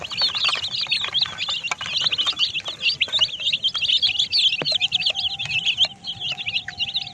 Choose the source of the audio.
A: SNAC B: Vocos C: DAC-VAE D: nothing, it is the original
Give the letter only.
D